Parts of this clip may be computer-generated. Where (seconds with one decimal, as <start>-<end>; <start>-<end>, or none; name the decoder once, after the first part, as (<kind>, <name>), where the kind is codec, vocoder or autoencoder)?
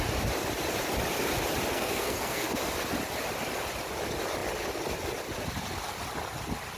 1.7-2.6 (codec, SNAC)